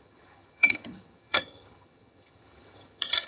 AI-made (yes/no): yes